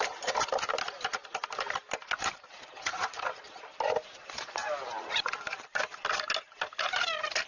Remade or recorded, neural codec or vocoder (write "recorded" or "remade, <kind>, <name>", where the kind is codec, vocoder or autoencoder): recorded